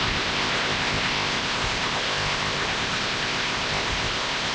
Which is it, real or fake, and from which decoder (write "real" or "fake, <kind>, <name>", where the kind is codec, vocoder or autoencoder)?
fake, codec, ZipCodec